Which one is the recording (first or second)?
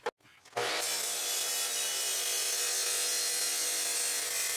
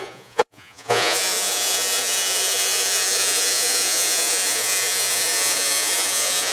first